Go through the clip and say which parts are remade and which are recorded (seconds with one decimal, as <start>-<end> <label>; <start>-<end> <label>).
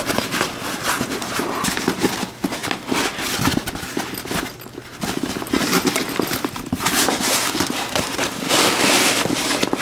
0.0-4.8 recorded; 4.8-8.4 remade; 8.4-9.8 recorded